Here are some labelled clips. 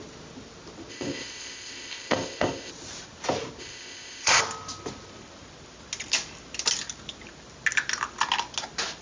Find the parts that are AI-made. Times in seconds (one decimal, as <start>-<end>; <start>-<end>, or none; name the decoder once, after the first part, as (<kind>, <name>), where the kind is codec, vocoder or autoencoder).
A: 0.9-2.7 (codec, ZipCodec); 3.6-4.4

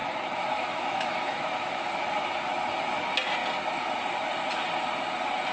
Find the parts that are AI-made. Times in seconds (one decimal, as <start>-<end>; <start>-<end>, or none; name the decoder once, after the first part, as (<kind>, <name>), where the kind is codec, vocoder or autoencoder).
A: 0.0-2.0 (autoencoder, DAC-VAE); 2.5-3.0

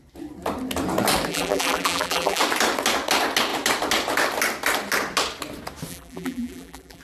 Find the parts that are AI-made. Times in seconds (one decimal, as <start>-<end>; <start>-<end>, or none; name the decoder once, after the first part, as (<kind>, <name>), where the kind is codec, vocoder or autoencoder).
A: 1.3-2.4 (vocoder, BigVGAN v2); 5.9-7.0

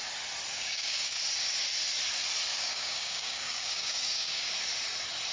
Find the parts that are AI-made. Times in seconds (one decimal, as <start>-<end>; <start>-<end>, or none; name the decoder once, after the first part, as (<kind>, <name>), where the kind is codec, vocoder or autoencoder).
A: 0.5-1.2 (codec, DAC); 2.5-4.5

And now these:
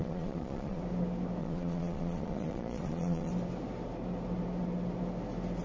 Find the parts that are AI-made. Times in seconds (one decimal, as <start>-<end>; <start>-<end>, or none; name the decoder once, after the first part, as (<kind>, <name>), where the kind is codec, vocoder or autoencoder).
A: 0.0-0.8 (vocoder, Vocos); 1.4-3.3

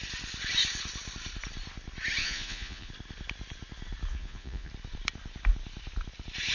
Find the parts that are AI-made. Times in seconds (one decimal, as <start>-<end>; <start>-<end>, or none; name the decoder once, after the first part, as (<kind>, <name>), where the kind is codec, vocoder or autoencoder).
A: 2.2-2.9 (vocoder, Vocos); 4.1-4.7

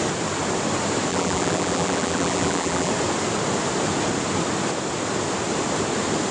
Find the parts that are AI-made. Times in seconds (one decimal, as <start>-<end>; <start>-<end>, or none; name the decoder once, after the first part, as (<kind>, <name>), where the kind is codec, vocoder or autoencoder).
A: 1.1-2.9 (vocoder, BigVGAN v2)